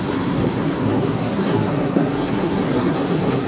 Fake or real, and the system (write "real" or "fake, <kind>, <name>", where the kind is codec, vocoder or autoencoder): fake, codec, SNAC